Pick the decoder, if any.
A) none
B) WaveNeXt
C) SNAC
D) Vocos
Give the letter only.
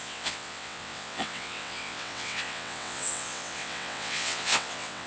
B